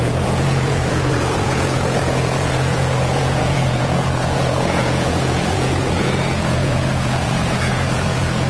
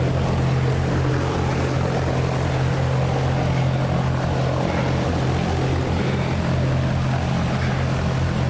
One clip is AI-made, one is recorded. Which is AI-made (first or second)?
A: first